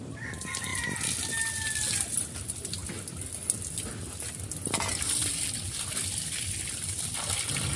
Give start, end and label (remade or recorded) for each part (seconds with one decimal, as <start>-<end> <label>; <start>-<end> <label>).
0.0-7.8 recorded